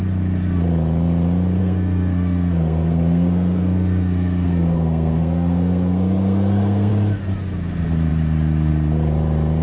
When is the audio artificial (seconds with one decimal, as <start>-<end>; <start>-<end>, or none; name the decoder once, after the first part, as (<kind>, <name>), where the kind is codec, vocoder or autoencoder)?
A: 1.6-6.9 (codec, SNAC)

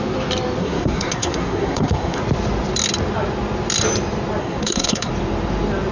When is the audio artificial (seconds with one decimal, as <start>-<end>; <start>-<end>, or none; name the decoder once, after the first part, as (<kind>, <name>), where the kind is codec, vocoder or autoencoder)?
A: 0.6-2.2 (codec, SNAC); 4.4-5.1

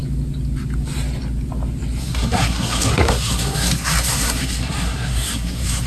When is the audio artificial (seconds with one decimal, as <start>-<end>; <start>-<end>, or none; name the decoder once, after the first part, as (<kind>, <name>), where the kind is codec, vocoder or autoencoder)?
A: 2.0-5.9 (codec, SNAC)